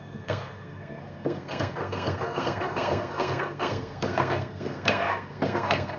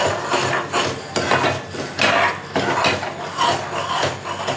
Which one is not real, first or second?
first